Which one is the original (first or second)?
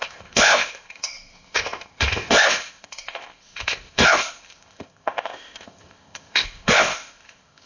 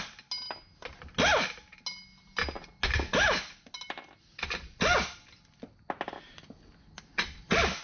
second